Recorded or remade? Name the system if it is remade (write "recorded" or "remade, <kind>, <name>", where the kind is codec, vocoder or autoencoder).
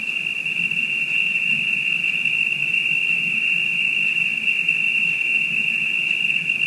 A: recorded